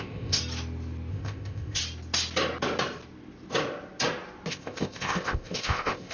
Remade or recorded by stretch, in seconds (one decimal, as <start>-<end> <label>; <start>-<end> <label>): 0.0-0.4 remade; 0.4-1.1 recorded; 1.1-1.8 remade; 1.8-4.5 recorded; 4.5-6.1 remade